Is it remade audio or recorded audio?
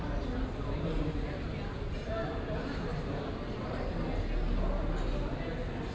recorded